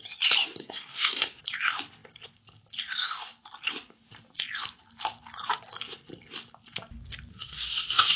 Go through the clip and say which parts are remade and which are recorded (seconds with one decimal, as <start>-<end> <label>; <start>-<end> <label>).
0.0-0.6 recorded; 0.6-1.4 remade; 1.4-7.3 recorded; 7.3-8.2 remade